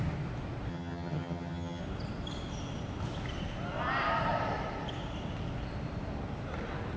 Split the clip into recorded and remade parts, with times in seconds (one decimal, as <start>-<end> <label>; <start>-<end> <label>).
0.0-0.7 recorded; 0.7-1.8 remade; 1.8-7.0 recorded